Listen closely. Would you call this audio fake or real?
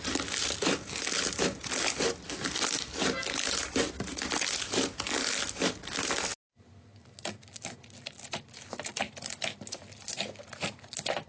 real